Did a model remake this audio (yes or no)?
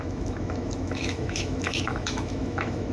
yes